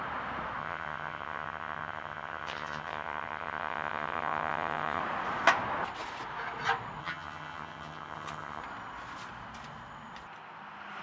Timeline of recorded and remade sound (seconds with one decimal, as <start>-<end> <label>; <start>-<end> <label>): 0.0-0.6 recorded; 0.6-5.0 remade; 5.0-7.0 recorded; 7.0-8.6 remade; 8.6-11.0 recorded